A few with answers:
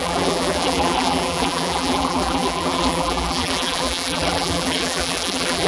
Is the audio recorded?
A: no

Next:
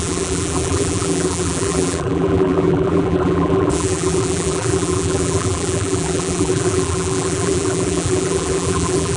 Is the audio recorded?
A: no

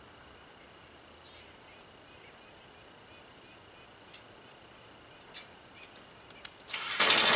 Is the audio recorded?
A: yes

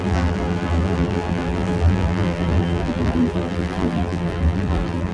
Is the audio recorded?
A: no